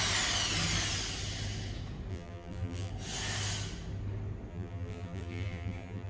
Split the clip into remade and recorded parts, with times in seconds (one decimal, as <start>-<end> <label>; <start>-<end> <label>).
0.0-2.1 recorded; 2.1-2.9 remade; 2.9-4.5 recorded; 4.5-6.1 remade